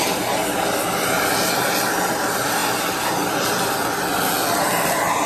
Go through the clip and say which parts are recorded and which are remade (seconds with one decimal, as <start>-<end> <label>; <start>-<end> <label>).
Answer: 0.0-5.3 recorded